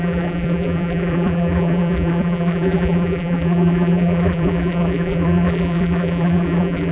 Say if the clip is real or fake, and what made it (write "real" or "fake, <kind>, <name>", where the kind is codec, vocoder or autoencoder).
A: fake, vocoder, BigVGAN v2